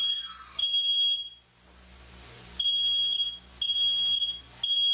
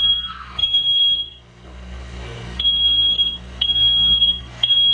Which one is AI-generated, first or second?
second